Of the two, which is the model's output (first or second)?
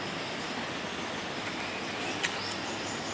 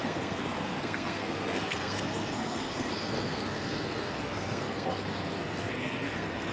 second